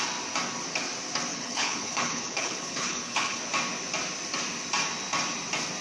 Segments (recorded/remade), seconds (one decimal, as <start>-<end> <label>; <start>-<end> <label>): 0.0-1.3 recorded; 1.3-3.4 remade; 3.4-5.8 recorded